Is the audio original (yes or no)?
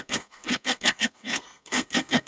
no